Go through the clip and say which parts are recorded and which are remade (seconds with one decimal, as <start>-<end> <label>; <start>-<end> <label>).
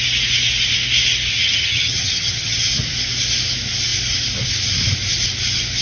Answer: 0.0-1.3 recorded; 1.3-2.7 remade; 2.7-5.8 recorded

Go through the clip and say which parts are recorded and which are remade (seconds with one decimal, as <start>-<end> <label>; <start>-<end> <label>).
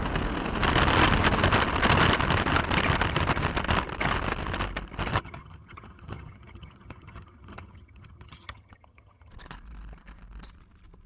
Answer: 0.0-5.1 recorded; 5.1-9.3 remade; 9.3-11.1 recorded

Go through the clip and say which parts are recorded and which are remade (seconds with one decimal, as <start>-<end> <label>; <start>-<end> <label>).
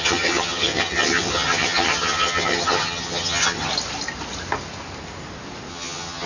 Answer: 0.0-3.7 remade; 3.7-5.7 recorded; 5.7-6.3 remade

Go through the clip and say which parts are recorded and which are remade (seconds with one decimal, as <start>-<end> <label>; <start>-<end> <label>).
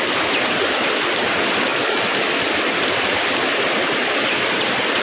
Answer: 0.0-5.0 recorded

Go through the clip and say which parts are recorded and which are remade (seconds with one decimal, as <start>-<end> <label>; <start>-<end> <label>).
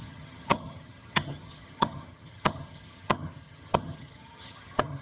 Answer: 0.0-5.0 remade